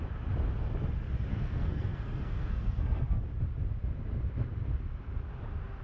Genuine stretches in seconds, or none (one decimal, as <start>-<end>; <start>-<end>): 0.0-1.3; 3.2-5.8